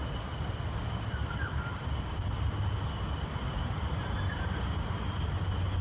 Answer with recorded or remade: recorded